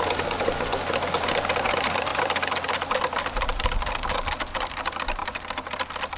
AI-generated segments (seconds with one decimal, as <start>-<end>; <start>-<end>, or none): none